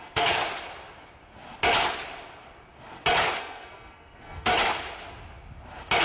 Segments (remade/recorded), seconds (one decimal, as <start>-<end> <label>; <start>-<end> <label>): 0.0-0.4 remade; 0.4-3.4 recorded; 3.4-4.5 remade; 4.5-6.0 recorded